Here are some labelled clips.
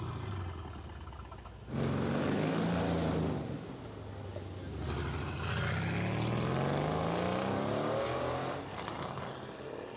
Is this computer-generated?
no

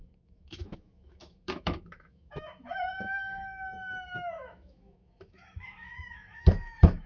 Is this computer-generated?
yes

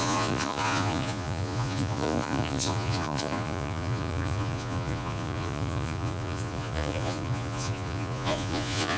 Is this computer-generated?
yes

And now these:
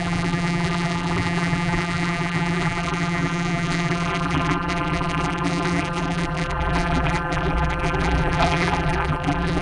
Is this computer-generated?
yes